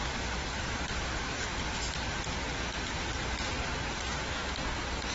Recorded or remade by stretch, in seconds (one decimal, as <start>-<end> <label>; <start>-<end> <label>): 0.0-1.5 remade; 1.5-2.8 recorded; 2.8-5.1 remade